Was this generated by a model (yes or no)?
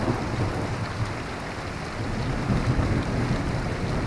no